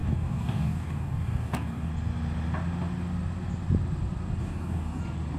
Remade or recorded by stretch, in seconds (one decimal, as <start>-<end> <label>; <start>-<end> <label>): 0.0-1.9 remade; 1.9-4.4 recorded; 4.4-5.0 remade; 5.0-5.4 recorded